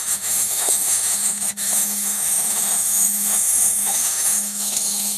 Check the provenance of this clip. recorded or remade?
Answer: remade